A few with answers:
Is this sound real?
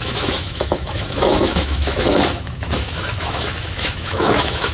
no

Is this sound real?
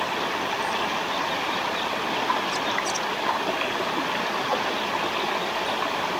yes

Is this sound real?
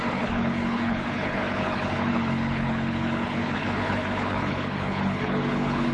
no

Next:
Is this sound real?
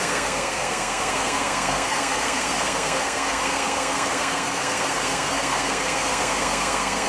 no